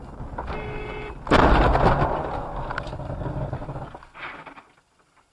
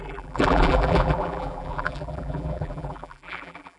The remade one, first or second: second